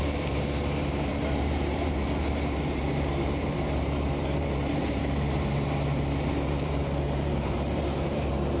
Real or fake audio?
fake